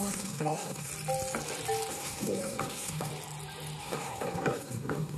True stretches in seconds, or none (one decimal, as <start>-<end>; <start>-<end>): 0.9-1.9; 3.1-3.8